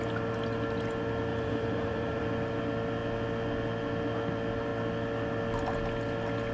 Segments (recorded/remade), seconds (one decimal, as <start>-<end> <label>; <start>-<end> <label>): 0.0-1.3 recorded; 1.3-2.2 remade; 2.2-6.5 recorded